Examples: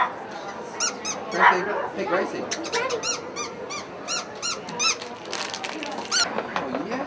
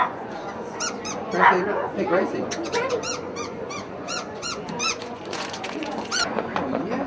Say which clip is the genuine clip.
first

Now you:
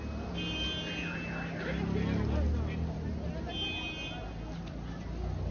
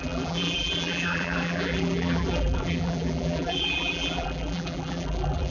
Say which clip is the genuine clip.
first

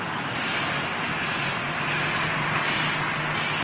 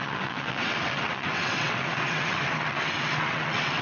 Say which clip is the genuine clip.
first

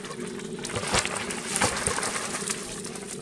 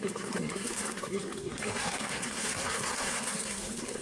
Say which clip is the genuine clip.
first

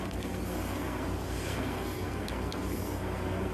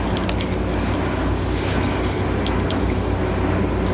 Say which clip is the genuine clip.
second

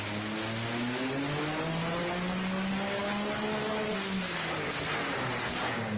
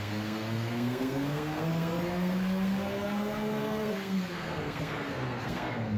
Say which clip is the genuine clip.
first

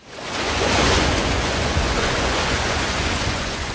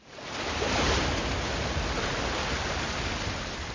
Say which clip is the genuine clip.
second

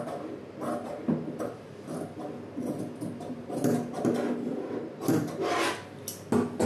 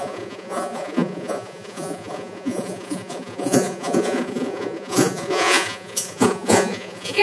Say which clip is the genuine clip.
first